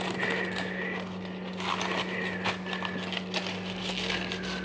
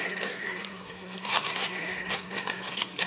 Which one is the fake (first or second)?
second